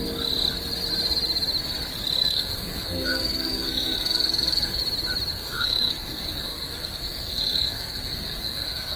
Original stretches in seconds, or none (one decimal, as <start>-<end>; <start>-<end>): 0.0-2.2; 4.8-5.3